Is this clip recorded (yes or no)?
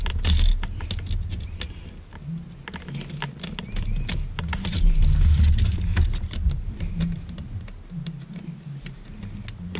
yes